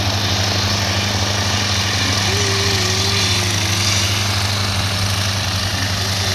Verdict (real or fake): real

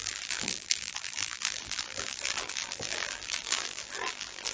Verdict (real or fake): fake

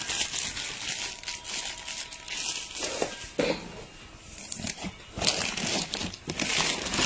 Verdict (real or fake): real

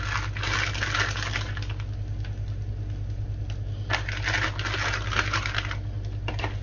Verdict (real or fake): real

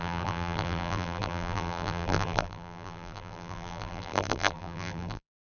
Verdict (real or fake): fake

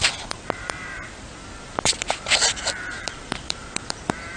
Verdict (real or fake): fake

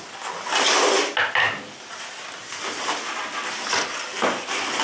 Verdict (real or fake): real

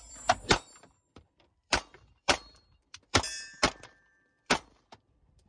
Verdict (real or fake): fake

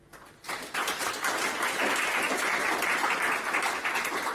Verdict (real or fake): real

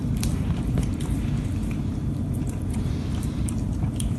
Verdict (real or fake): fake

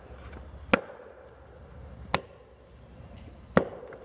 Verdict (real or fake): real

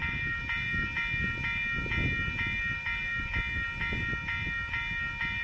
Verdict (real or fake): real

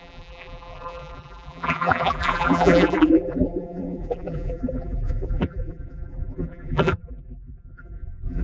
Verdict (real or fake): fake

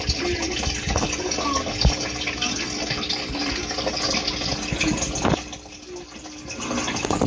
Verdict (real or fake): real